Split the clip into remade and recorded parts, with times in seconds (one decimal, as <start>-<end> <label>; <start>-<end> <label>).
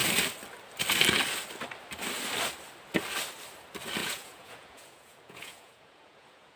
0.0-4.0 recorded; 4.0-6.6 remade